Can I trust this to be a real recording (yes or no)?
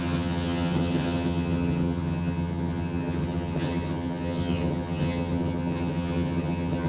no